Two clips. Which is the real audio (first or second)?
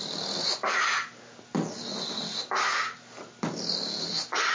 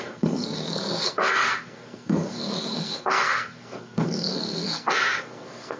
first